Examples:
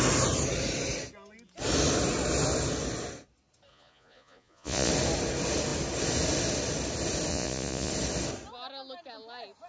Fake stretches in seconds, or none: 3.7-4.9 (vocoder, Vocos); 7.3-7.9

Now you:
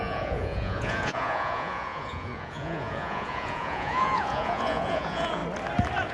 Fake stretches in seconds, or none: 0.0-5.4 (vocoder, Vocos)

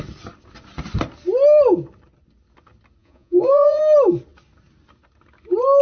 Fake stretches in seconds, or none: 3.0-3.8 (vocoder, Vocos)

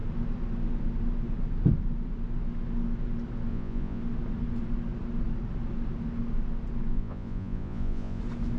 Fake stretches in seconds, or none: 3.5-4.0 (vocoder, Vocos); 6.9-8.2

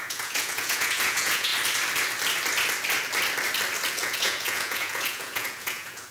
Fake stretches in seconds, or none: 0.0-1.5 (vocoder, Vocos); 3.9-6.1